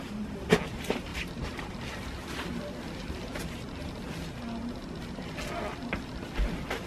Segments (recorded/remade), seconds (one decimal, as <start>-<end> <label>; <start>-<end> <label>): 0.0-1.1 recorded; 1.1-1.7 remade; 1.7-6.9 recorded